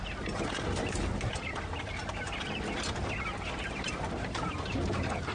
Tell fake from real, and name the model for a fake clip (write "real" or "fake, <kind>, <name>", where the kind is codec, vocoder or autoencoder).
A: real